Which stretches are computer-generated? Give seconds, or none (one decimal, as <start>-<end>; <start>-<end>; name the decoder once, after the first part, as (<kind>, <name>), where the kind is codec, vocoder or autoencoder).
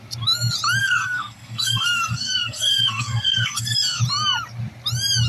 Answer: 0.8-4.0 (codec, SNAC)